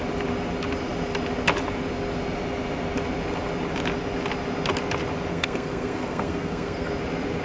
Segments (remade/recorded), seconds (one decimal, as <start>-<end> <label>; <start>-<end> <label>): 0.0-5.3 recorded; 5.3-6.9 remade; 6.9-7.4 recorded